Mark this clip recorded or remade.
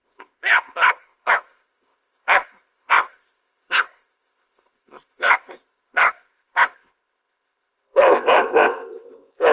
remade